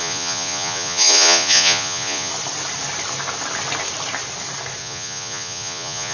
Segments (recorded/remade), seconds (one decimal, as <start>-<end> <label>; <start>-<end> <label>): 0.0-2.3 remade; 2.3-4.8 recorded; 4.8-6.1 remade